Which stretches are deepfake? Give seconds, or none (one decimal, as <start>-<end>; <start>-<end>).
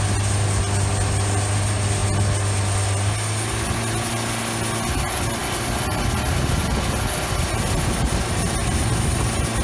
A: none